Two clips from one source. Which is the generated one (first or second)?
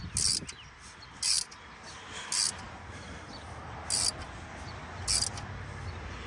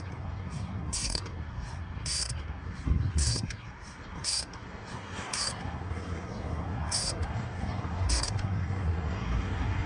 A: second